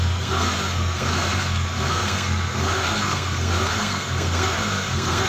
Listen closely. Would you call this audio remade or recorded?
remade